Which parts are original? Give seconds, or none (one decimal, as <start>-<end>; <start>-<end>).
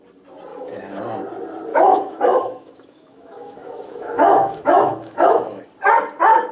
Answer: 0.0-0.5; 1.0-1.7; 5.6-6.5